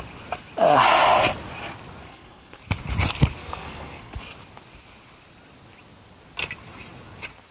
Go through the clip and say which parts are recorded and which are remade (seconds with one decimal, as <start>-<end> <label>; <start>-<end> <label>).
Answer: 0.0-2.0 recorded; 2.0-2.6 remade; 2.6-3.4 recorded; 3.4-4.2 remade; 4.2-7.5 recorded